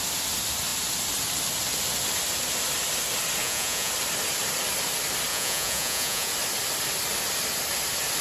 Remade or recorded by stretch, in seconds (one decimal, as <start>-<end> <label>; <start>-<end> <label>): 0.0-3.4 recorded; 3.4-3.9 remade; 3.9-5.3 recorded; 5.3-6.3 remade; 6.3-8.2 recorded